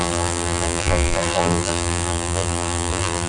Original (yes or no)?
no